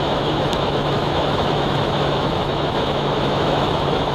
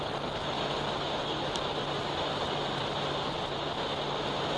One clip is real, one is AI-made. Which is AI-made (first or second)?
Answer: first